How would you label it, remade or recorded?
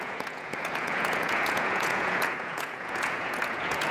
remade